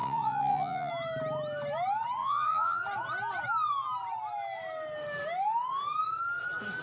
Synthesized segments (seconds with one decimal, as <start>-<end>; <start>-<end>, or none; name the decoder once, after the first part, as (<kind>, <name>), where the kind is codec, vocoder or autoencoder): 0.0-0.9 (vocoder, Vocos); 2.2-2.8